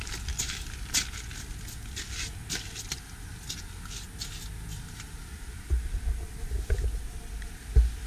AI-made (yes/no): no